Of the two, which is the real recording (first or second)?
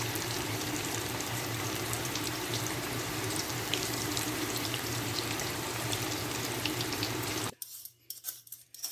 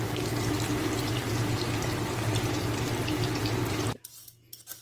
second